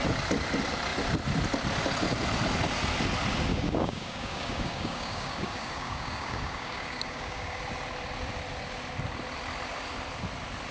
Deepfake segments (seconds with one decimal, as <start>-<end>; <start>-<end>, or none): 3.5-7.6